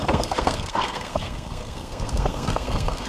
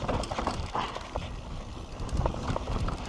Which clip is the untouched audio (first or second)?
second